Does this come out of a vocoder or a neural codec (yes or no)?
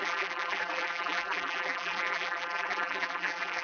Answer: yes